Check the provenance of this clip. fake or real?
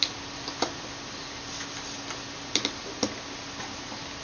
real